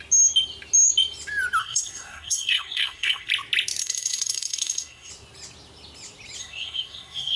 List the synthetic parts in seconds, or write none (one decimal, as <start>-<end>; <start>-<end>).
1.6-3.3; 3.8-5.1; 6.4-7.4

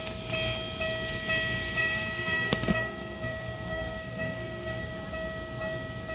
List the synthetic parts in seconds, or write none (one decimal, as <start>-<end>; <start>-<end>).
1.8-4.9